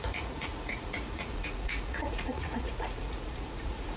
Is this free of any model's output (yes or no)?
no